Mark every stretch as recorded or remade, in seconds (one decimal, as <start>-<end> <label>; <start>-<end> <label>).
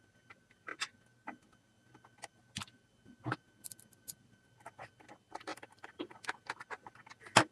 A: 0.0-5.5 recorded; 5.5-6.2 remade; 6.2-7.5 recorded